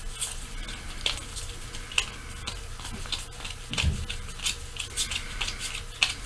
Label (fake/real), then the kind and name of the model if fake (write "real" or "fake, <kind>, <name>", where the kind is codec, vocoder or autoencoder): real